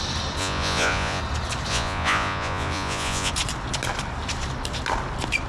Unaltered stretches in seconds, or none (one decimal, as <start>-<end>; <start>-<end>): 0.0-0.4; 1.2-1.7; 3.3-5.5